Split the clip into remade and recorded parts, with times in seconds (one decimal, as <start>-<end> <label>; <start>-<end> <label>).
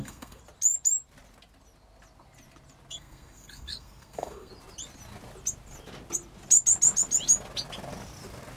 0.0-0.4 remade; 0.4-2.9 recorded; 2.9-4.5 remade; 4.5-8.6 recorded